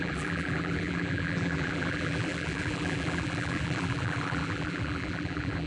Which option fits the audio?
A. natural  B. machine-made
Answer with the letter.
B